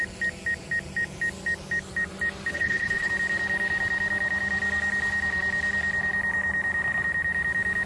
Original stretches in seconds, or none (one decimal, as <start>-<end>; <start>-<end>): 0.0-2.5; 3.1-7.9